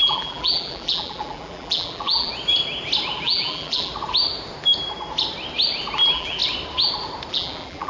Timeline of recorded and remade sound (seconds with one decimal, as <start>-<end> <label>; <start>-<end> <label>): 0.0-2.3 remade; 2.3-3.2 recorded; 3.2-3.9 remade; 3.9-6.0 recorded; 6.0-6.4 remade; 6.4-7.3 recorded; 7.3-7.9 remade